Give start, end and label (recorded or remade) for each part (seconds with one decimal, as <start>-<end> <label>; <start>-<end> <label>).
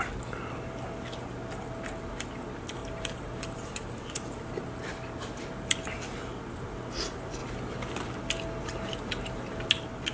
0.0-2.8 recorded; 2.8-4.5 remade; 4.5-10.1 recorded